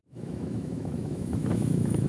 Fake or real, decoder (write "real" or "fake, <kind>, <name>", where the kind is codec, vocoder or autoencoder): fake, autoencoder, DAC-VAE